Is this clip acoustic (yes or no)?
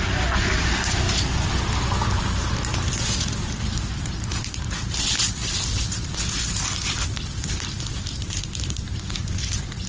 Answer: yes